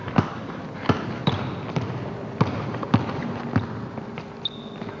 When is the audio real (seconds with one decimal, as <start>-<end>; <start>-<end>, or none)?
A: 0.6-5.0